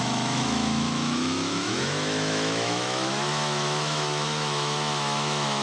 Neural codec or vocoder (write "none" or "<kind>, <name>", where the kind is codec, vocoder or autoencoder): autoencoder, DAC-VAE